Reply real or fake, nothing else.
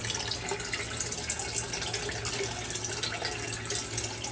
real